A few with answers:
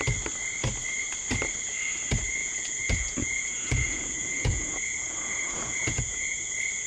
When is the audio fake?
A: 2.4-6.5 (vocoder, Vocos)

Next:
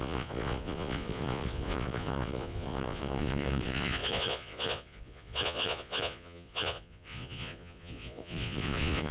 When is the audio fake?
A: 0.0-9.1 (vocoder, Vocos)

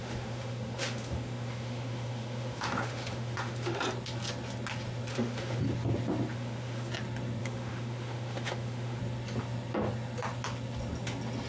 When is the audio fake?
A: 0.0-3.8 (autoencoder, DAC-VAE); 5.1-5.6; 6.3-6.9; 7.4-9.0

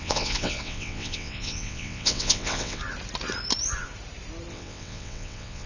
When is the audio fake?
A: 0.0-2.8 (vocoder, WaveNeXt); 4.5-5.7

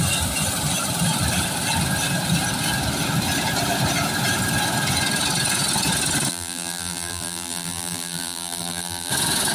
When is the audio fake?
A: 6.3-9.1 (vocoder, BigVGAN v2)

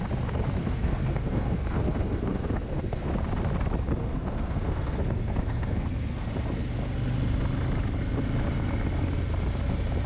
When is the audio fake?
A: 0.6-3.1 (codec, SNAC); 4.0-6.3

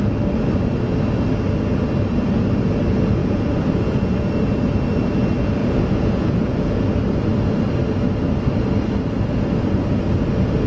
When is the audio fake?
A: 3.2-4.3 (vocoder, Vocos); 5.6-6.8